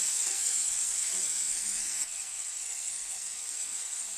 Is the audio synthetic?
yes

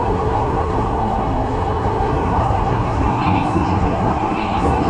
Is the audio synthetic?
yes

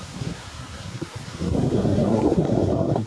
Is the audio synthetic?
yes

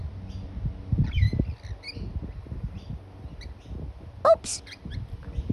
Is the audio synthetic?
no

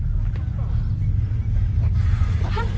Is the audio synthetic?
no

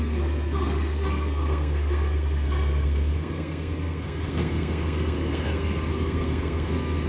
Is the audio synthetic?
yes